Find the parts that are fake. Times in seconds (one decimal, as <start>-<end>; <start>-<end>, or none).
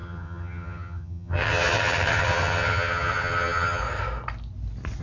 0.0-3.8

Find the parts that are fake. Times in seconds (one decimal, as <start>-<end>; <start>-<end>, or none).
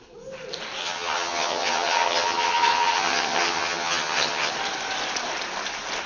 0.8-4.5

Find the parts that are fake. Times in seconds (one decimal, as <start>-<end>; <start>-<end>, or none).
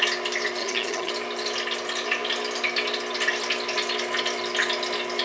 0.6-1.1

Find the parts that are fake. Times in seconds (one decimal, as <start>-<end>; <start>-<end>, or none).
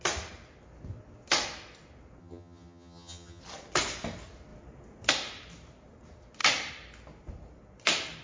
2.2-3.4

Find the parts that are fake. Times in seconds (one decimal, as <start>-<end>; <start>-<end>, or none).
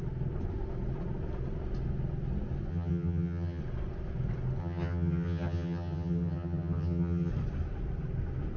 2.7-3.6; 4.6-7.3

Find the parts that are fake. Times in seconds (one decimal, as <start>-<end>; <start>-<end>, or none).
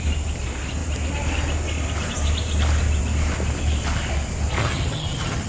4.6-5.5